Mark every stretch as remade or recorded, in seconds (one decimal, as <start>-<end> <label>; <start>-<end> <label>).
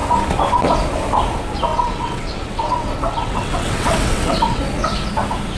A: 0.0-1.7 recorded; 1.7-4.6 remade; 4.6-5.6 recorded